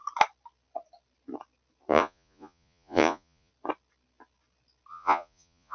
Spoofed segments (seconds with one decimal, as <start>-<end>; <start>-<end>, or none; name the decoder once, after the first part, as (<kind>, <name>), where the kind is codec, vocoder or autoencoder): 1.9-3.5 (vocoder, Vocos); 4.9-5.7

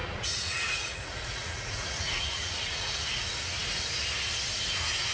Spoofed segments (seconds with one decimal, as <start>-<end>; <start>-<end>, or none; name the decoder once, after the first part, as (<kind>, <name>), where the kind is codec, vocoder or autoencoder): 0.0-3.1 (vocoder, Vocos)

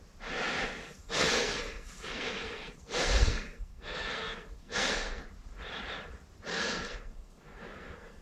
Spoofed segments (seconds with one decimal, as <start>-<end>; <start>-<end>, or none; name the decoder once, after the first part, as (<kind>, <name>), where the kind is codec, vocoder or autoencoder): 0.8-5.2 (codec, SNAC); 6.5-8.2